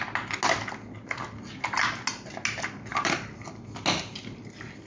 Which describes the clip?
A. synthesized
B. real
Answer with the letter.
B